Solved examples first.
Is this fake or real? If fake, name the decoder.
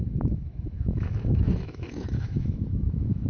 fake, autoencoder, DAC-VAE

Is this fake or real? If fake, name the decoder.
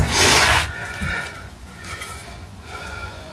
fake, vocoder, Vocos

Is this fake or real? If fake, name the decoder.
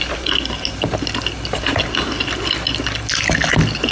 real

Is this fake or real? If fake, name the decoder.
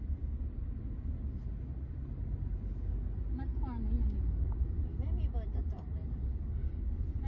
real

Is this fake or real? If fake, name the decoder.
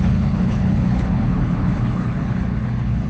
fake, codec, HILCodec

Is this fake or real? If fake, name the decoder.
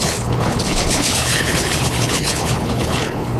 fake, codec, HILCodec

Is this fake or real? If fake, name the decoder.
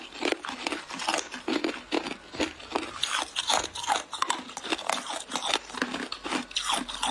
real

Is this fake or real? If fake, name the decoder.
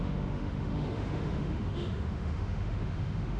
fake, autoencoder, DAC-VAE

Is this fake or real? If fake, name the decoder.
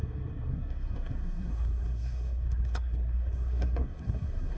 fake, codec, SNAC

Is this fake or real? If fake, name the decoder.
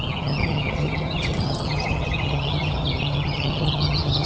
fake, vocoder, HiFi-GAN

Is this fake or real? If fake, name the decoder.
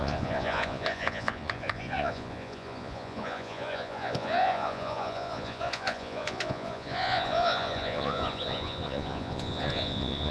fake, vocoder, Vocos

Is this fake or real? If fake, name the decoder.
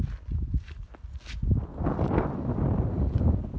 real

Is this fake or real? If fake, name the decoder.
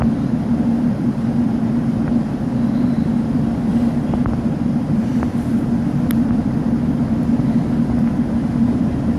fake, vocoder, BigVGAN v2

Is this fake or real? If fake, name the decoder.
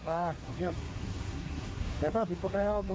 fake, codec, SNAC